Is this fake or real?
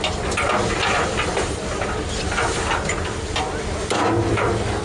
real